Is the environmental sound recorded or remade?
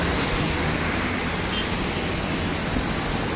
recorded